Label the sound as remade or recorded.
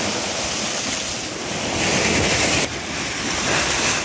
recorded